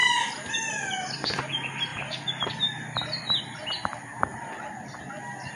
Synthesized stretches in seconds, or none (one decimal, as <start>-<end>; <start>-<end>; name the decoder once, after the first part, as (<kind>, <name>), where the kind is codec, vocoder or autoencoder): 1.9-3.4 (vocoder, BigVGAN v2)